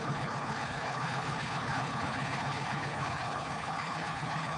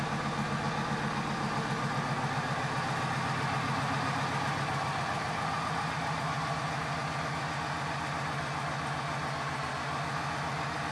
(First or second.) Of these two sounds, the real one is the second